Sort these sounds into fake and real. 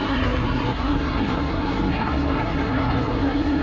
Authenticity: fake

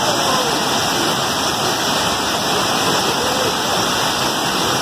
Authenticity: real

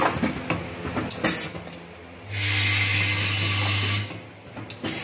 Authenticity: real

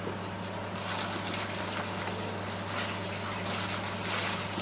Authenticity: real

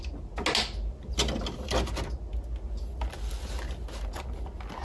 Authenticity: real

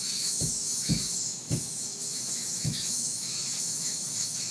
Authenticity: fake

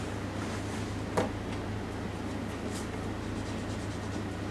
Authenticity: real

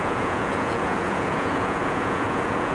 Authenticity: fake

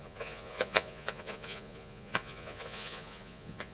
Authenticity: fake